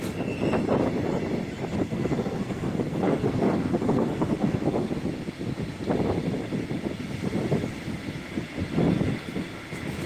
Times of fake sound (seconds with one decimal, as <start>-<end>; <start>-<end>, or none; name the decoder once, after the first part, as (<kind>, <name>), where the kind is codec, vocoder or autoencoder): 1.8-4.9 (codec, SNAC)